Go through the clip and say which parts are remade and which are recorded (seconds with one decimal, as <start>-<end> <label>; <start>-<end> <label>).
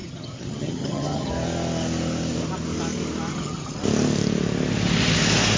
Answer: 0.0-1.3 remade; 1.3-3.3 recorded; 3.3-3.8 remade; 3.8-5.6 recorded